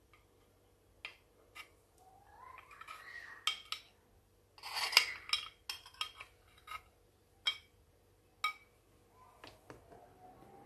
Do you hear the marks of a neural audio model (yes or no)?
no